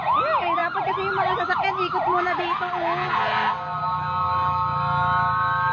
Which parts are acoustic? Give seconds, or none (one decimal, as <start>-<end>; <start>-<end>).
0.0-5.7